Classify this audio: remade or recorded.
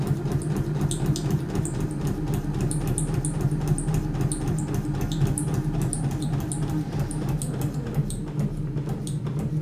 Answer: recorded